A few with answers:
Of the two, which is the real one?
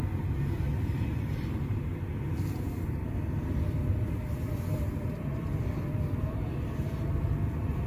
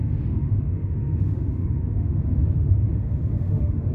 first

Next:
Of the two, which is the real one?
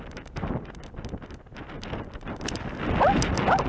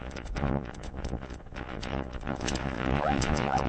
first